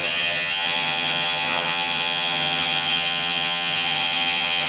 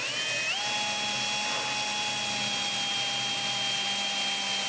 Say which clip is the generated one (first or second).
first